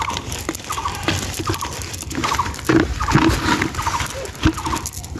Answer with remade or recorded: recorded